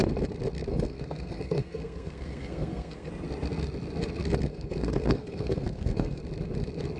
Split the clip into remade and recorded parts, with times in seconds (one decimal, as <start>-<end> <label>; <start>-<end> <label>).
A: 0.0-0.7 recorded; 0.7-3.1 remade; 3.1-4.5 recorded; 4.5-6.2 remade; 6.2-7.0 recorded